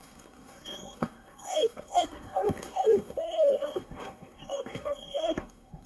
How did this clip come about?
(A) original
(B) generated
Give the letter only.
B